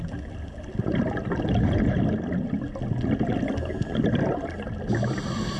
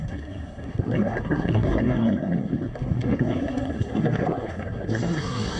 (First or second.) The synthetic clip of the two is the second